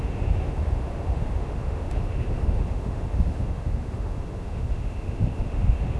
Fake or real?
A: fake